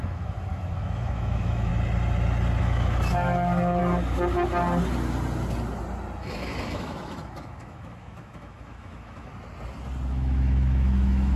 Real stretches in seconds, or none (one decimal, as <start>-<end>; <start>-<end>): 1.7-2.6; 3.8-6.2; 9.3-10.1